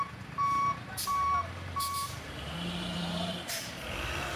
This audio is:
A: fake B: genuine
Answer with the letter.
A